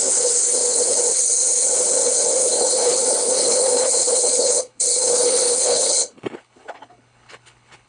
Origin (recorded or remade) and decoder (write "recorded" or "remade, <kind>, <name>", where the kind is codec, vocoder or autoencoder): remade, codec, HILCodec